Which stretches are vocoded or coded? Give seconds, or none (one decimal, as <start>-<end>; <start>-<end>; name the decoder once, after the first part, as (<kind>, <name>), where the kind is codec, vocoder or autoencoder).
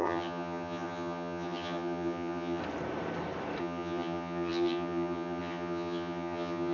0.0-2.6 (vocoder, HiFi-GAN); 3.6-6.7